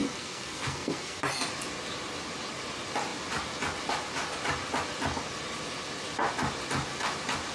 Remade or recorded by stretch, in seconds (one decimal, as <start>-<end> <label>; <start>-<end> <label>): 0.0-1.2 remade; 1.2-7.5 recorded